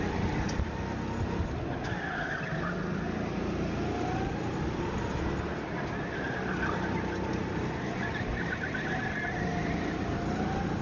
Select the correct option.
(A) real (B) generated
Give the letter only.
A